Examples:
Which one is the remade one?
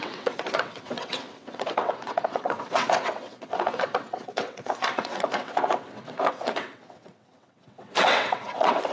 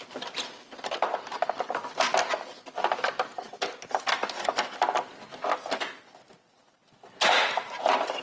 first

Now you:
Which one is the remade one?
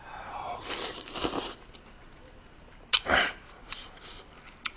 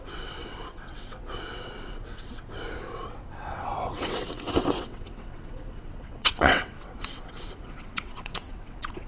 second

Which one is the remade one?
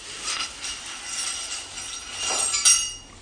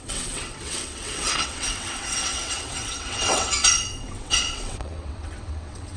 second